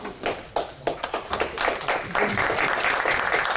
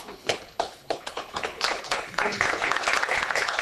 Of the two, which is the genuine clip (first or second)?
first